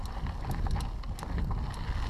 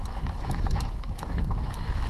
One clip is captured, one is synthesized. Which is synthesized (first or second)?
second